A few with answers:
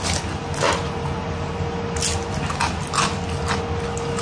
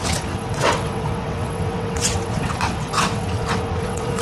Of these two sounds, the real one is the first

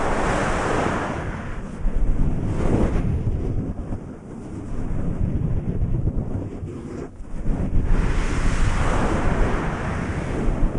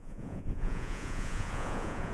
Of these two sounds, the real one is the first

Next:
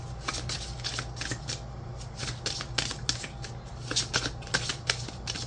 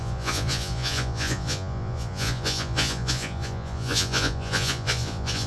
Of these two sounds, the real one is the first